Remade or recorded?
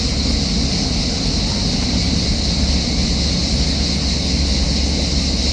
recorded